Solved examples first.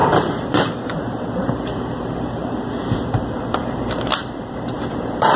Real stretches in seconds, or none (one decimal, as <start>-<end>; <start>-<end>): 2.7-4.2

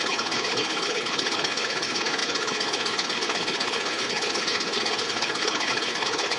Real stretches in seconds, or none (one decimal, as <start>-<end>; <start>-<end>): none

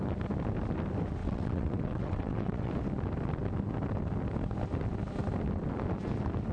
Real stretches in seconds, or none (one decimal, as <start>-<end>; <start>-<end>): 0.0-1.2; 2.7-6.5